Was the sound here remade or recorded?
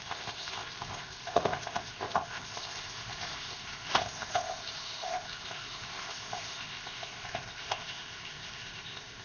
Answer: remade